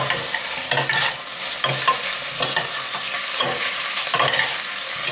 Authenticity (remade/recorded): recorded